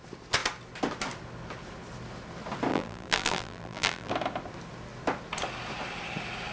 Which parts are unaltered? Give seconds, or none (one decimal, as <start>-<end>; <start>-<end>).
0.0-2.7; 4.1-6.5